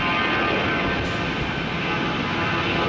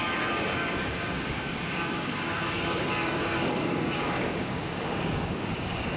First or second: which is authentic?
first